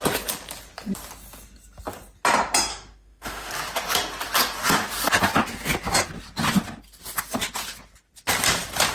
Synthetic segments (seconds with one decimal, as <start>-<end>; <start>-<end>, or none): 2.7-3.5